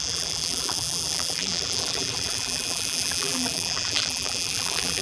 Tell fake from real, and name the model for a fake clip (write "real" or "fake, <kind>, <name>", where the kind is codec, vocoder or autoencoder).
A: fake, vocoder, BigVGAN v2